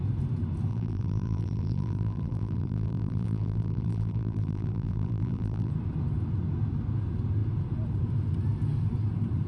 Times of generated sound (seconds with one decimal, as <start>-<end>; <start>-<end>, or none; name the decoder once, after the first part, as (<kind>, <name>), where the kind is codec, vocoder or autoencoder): 0.7-5.7 (vocoder, BigVGAN v2)